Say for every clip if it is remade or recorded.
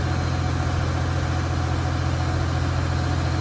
recorded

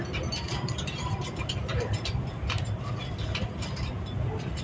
recorded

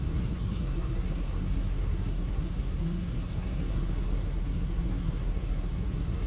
remade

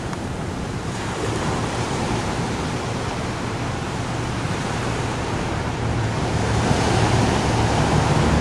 remade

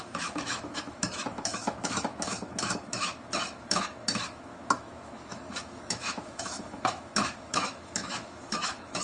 remade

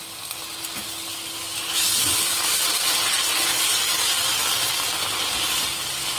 recorded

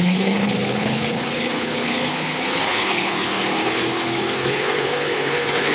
remade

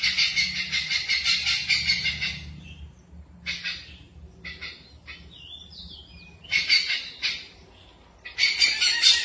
recorded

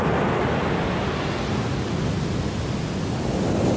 recorded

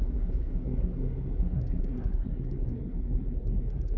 remade